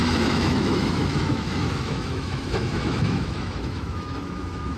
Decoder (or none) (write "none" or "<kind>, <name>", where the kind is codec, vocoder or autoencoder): autoencoder, DAC-VAE